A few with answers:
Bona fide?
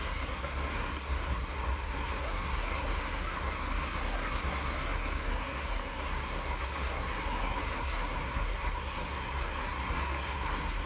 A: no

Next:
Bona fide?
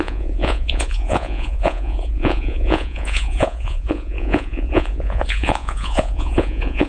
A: no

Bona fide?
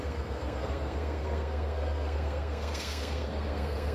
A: no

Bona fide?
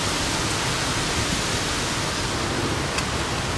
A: yes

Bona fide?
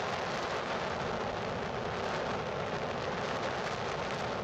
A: yes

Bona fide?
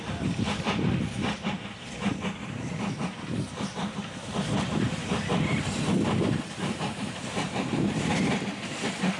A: no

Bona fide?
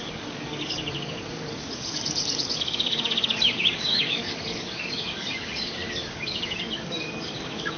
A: no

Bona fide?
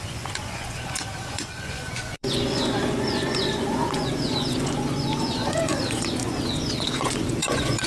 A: no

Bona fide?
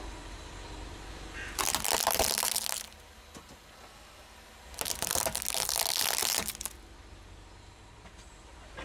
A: yes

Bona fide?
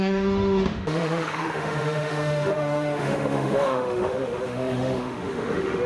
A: no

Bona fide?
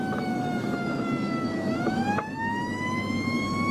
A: no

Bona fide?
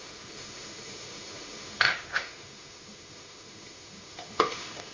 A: no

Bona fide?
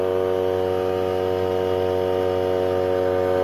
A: yes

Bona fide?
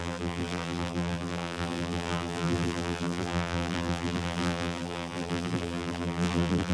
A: no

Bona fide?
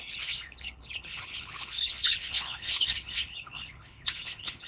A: no